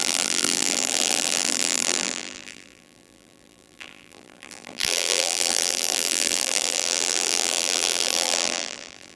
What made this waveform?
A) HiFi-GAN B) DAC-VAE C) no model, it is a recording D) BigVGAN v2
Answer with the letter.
D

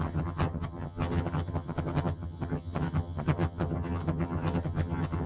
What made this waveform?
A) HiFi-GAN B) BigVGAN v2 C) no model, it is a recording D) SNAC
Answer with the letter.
A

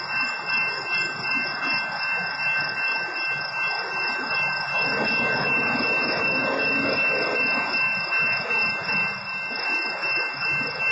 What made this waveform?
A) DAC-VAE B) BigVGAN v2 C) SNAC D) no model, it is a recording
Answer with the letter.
D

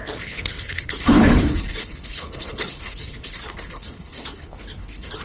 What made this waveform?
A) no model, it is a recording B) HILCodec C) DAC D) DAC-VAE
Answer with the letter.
B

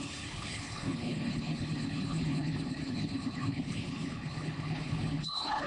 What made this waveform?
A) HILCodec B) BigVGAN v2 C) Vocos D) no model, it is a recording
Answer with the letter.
A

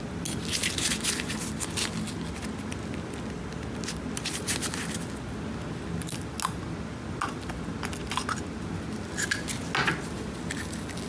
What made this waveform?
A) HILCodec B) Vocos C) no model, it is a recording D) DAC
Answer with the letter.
C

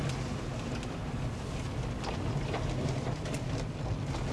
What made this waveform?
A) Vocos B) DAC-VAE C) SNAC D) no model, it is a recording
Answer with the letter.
D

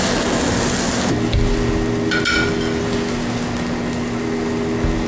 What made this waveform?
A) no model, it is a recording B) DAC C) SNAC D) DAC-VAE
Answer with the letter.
A